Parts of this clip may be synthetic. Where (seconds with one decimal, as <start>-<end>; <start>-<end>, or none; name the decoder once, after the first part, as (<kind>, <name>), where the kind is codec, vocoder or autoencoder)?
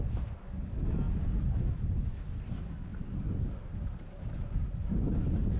2.9-5.0 (vocoder, BigVGAN v2)